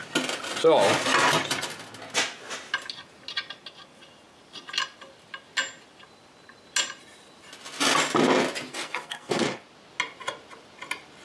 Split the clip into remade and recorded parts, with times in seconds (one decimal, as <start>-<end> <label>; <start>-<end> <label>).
0.0-8.7 recorded; 8.7-9.6 remade; 9.6-11.2 recorded